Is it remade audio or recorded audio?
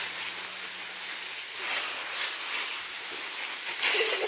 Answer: recorded